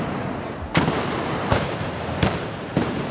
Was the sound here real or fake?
fake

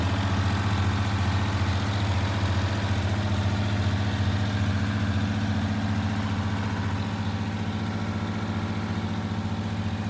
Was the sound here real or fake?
real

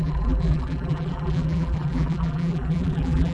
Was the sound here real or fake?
fake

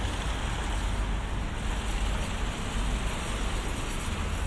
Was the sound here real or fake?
real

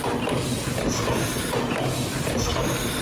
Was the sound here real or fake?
fake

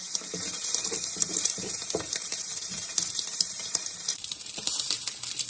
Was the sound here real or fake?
fake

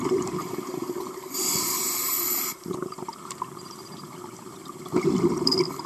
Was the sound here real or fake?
fake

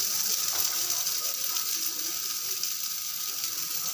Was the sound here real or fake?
real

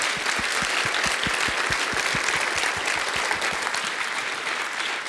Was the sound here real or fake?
real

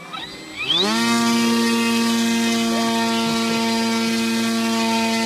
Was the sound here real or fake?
real